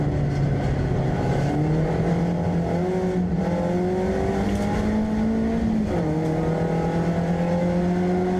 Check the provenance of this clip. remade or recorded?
recorded